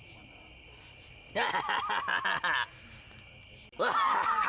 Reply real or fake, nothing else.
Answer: real